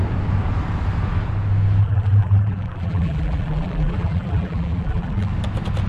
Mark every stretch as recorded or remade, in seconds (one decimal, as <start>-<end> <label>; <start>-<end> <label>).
0.0-1.8 recorded; 1.8-5.3 remade; 5.3-5.9 recorded